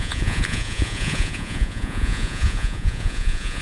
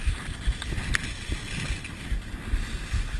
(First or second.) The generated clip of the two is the first